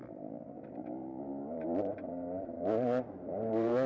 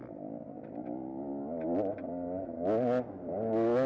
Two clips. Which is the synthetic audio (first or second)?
first